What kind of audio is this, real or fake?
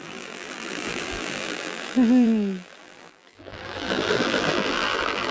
fake